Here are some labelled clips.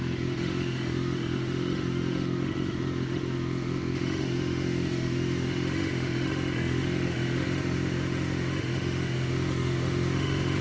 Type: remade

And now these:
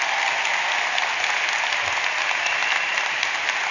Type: recorded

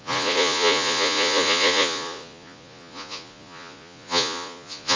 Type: remade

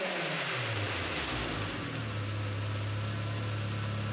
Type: recorded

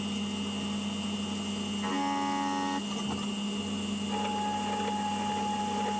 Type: recorded